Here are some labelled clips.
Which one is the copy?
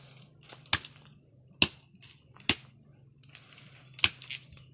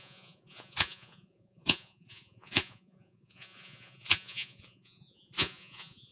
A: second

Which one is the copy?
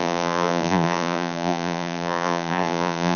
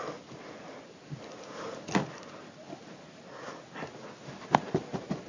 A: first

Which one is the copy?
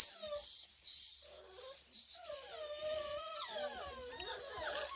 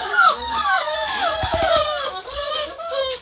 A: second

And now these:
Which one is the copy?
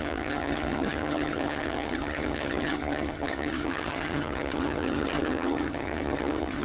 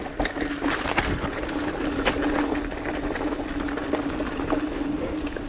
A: first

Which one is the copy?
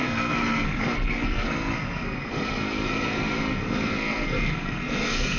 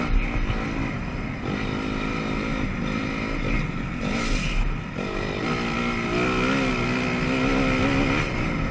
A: first